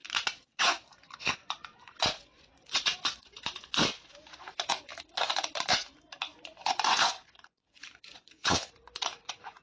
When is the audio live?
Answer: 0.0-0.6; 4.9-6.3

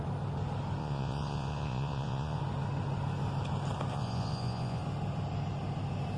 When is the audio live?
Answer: 0.0-0.8; 2.4-3.9; 4.8-6.2

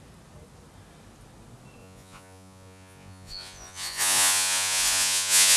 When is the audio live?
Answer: 0.0-1.8

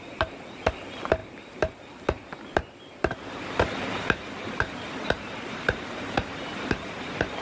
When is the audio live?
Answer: 0.0-7.4

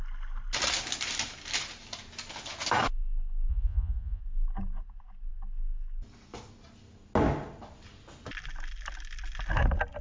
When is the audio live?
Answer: 0.0-3.5; 4.2-10.0